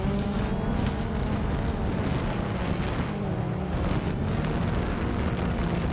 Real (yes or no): yes